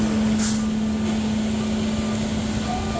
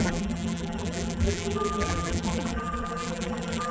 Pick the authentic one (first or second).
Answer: first